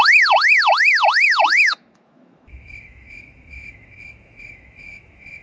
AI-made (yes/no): yes